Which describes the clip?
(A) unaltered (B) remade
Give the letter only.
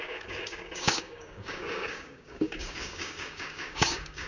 B